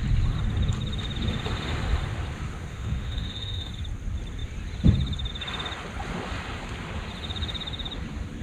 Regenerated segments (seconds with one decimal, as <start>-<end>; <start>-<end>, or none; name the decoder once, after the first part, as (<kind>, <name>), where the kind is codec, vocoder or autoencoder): 2.7-3.7 (autoencoder, DAC-VAE)